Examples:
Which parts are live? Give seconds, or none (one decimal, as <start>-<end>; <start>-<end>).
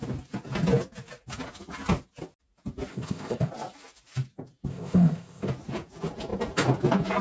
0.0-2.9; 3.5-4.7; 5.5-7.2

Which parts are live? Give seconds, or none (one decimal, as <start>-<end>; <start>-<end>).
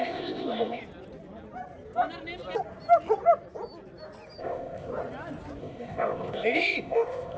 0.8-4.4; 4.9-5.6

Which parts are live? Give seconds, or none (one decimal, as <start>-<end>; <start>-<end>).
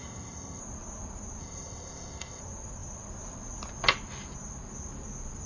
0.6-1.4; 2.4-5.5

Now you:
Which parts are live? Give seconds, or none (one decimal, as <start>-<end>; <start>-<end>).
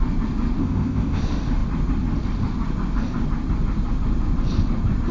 0.0-0.6; 1.2-5.1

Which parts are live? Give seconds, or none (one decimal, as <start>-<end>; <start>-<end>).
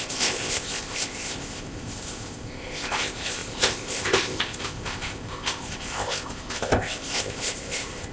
none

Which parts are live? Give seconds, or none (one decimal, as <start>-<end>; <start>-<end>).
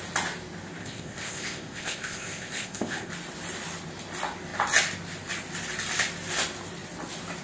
0.0-0.8; 3.1-7.4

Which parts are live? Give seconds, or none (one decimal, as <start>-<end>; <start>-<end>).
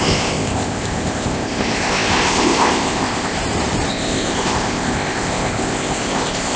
3.4-3.9